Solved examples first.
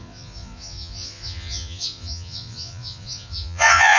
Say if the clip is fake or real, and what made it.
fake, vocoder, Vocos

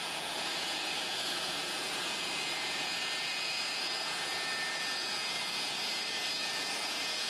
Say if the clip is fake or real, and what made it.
fake, vocoder, Vocos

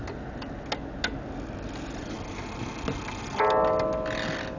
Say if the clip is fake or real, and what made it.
real